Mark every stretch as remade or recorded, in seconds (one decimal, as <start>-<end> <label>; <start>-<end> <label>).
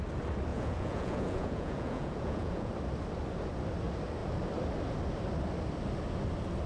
0.0-0.5 recorded; 0.5-2.7 remade; 2.7-6.7 recorded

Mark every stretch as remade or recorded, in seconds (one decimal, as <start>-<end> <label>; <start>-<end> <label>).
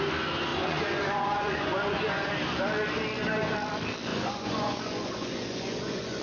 0.0-0.5 recorded; 0.5-2.3 remade; 2.3-4.1 recorded; 4.1-6.2 remade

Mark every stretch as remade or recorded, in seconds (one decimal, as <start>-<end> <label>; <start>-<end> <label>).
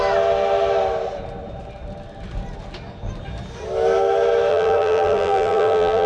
0.0-4.5 recorded; 4.5-6.1 remade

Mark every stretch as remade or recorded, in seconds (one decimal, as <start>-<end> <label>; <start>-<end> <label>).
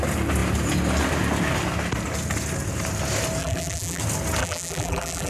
0.0-3.4 recorded; 3.4-4.0 remade; 4.0-4.4 recorded; 4.4-5.3 remade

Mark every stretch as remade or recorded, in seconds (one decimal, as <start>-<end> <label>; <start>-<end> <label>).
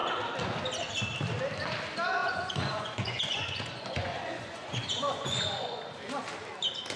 0.0-2.2 recorded; 2.2-5.9 remade; 5.9-7.0 recorded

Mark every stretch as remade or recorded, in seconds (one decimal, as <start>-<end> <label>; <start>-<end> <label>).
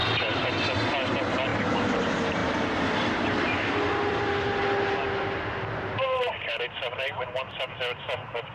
0.0-8.5 recorded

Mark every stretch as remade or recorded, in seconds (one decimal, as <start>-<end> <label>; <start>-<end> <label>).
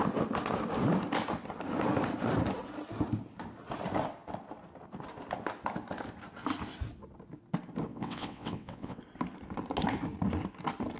0.0-7.9 recorded; 7.9-9.0 remade; 9.0-11.0 recorded